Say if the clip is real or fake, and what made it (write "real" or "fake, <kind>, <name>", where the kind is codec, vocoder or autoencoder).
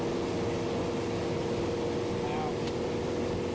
real